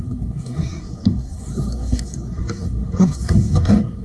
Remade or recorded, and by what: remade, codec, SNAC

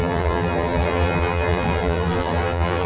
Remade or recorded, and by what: remade, vocoder, BigVGAN v2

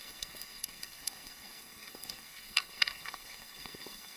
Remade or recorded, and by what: remade, codec, SNAC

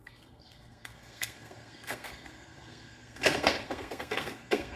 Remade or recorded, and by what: remade, codec, SNAC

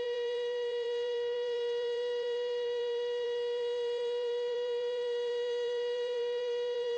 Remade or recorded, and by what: remade, vocoder, BigVGAN v2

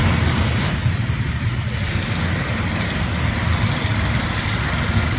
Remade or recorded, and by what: recorded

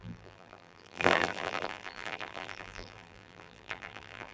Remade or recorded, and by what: remade, vocoder, BigVGAN v2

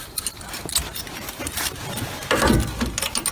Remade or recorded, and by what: recorded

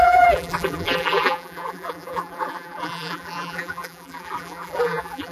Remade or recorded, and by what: remade, vocoder, BigVGAN v2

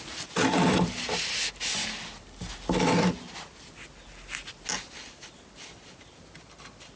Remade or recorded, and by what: recorded